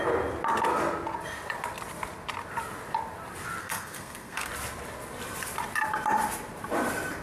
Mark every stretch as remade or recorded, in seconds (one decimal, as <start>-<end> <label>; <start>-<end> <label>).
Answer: 0.0-3.6 recorded; 3.6-4.5 remade; 4.5-7.2 recorded